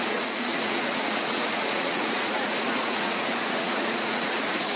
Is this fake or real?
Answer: fake